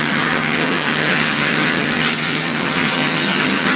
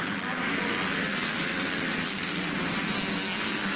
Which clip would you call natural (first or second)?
second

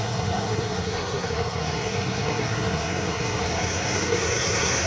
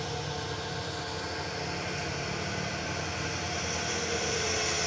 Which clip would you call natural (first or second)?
second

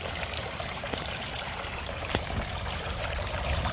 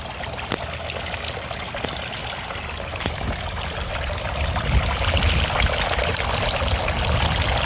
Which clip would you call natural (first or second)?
second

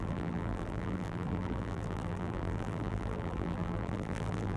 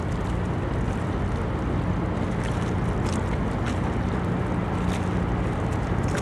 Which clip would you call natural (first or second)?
second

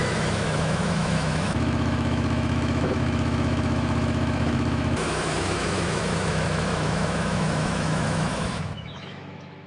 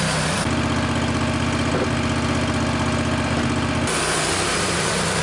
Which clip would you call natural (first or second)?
second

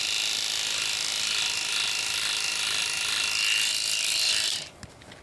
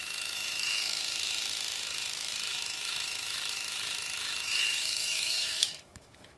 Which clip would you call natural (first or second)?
first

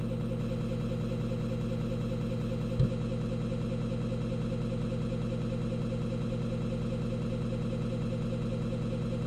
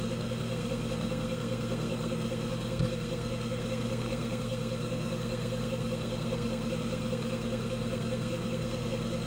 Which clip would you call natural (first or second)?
first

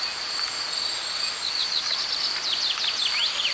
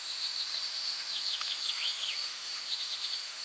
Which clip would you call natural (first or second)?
first